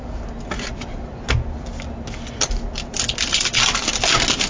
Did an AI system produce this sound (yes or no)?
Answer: no